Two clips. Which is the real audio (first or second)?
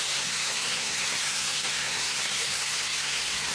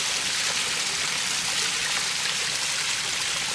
second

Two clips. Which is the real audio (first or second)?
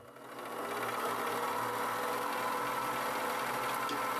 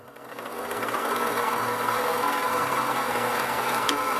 first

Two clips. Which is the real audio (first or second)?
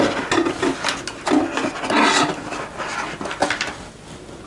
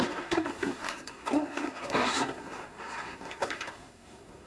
first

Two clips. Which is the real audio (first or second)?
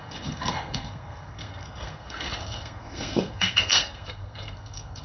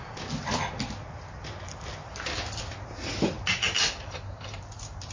second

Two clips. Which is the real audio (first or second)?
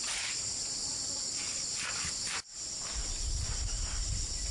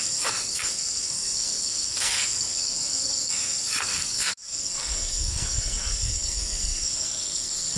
first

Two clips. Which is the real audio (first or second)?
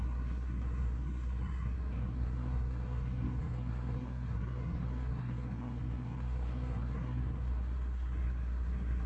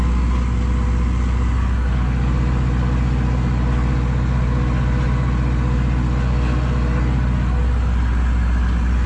second